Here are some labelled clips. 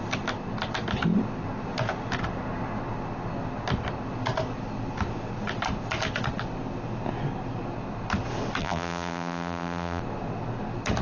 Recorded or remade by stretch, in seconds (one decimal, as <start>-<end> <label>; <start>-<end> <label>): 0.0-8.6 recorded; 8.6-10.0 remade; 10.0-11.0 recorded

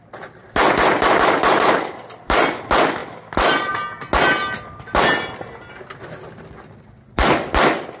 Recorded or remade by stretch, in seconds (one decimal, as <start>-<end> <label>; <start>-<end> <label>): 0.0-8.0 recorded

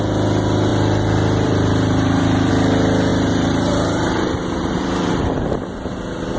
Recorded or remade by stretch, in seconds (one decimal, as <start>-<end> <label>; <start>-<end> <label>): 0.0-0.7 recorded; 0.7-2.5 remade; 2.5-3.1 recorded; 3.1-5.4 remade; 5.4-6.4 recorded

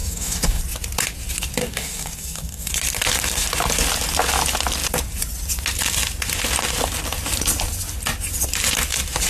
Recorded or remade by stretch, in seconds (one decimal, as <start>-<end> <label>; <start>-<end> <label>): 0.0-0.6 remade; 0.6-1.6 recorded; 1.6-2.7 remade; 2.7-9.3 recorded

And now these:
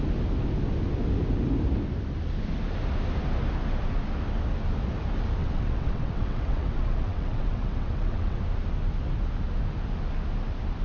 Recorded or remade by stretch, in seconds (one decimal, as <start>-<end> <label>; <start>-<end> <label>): 0.0-5.4 recorded; 5.4-8.4 remade; 8.4-10.8 recorded

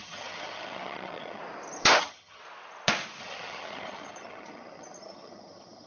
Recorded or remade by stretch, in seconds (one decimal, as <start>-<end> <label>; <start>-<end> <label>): 0.0-1.4 remade; 1.4-2.0 recorded; 2.0-2.4 remade; 2.4-3.2 recorded; 3.2-5.9 remade

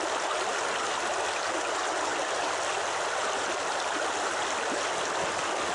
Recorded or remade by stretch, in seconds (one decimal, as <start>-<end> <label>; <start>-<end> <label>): 0.0-5.7 recorded

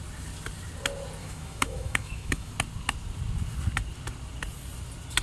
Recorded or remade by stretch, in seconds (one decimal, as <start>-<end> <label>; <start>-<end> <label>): 0.0-1.2 recorded; 1.2-2.5 remade; 2.5-5.2 recorded